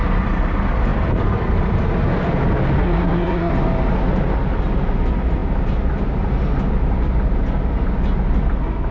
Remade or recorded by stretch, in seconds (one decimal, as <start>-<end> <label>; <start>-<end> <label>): 0.0-2.8 recorded; 2.8-3.5 remade; 3.5-8.9 recorded